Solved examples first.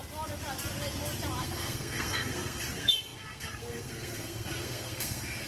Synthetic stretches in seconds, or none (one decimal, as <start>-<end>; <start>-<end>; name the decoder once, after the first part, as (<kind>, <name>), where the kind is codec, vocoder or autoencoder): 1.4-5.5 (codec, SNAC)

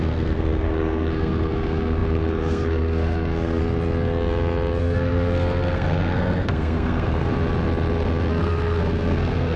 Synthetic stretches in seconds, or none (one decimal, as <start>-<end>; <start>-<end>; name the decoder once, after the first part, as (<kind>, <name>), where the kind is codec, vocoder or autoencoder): 0.0-3.6 (codec, SNAC); 4.8-7.3; 8.3-9.6

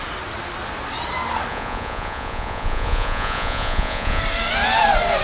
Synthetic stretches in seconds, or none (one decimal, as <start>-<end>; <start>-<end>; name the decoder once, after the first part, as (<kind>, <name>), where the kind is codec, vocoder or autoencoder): 1.5-4.2 (vocoder, Vocos)